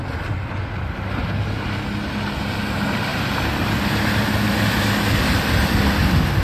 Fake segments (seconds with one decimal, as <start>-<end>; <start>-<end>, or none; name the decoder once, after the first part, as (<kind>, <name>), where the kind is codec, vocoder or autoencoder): none